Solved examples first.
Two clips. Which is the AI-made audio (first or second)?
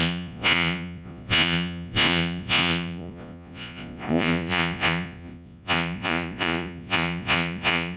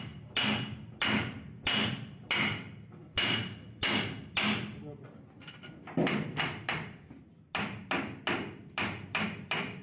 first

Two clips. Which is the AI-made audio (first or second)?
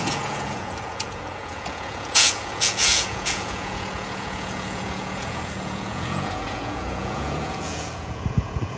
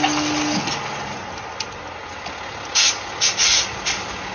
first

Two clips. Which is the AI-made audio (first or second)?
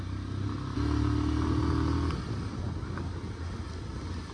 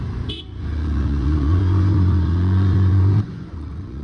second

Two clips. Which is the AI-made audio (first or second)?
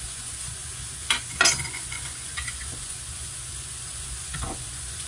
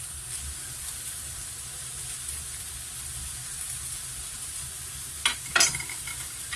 first